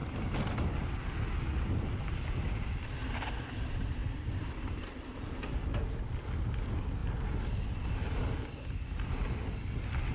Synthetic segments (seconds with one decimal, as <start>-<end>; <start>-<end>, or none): none